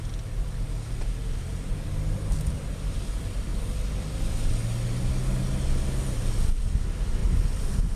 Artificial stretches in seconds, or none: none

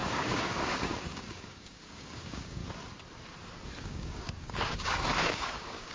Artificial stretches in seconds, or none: 0.0-2.6; 3.8-5.9

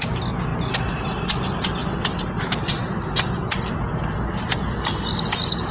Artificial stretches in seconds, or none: none